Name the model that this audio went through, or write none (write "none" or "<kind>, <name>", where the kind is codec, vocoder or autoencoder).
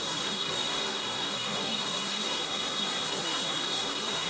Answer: codec, SNAC